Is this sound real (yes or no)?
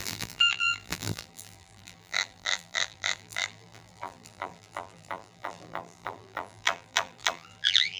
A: no